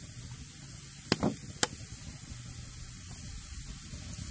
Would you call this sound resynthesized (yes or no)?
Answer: no